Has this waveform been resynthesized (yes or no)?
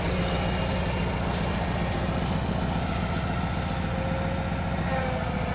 no